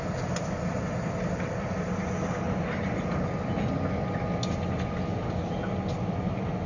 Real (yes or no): yes